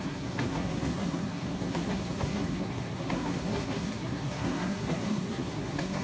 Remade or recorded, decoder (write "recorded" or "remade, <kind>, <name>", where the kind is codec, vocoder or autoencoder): remade, codec, SNAC